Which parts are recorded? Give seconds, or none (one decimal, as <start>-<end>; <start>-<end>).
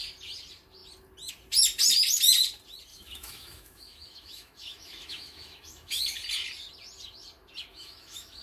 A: 0.0-2.9; 6.0-7.7